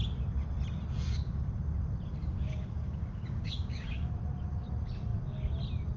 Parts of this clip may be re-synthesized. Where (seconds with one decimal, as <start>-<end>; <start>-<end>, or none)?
2.2-4.1